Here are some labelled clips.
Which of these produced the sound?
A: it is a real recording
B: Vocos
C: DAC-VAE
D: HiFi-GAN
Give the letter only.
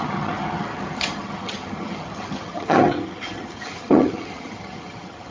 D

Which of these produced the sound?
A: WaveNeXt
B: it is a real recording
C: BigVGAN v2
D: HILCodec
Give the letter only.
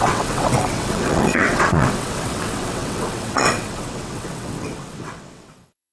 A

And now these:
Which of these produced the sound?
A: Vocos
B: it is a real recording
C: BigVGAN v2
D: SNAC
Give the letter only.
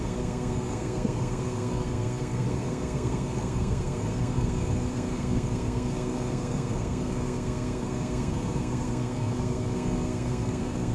D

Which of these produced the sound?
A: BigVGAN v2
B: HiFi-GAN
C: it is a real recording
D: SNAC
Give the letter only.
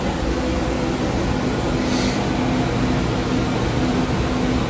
C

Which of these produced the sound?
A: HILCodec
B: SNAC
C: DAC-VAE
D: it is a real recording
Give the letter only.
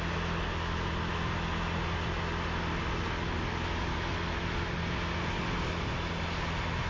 D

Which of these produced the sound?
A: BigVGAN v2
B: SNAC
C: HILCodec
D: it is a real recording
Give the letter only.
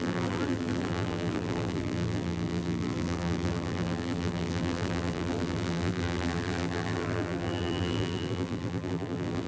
A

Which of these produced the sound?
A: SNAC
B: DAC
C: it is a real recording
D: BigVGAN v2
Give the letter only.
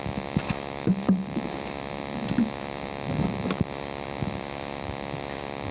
D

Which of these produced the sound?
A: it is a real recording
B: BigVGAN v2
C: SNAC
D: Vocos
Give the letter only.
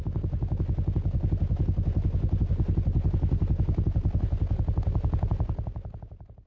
A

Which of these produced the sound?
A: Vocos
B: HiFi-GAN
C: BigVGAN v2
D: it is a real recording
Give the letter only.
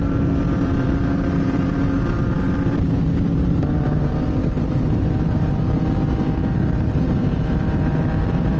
C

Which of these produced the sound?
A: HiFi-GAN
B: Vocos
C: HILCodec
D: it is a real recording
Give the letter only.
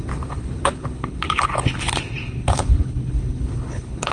C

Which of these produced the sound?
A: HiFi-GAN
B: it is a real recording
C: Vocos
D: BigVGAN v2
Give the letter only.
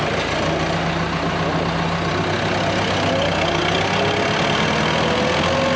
B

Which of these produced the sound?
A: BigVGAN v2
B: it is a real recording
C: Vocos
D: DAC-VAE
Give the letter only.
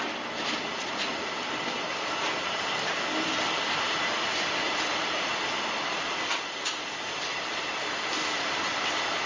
B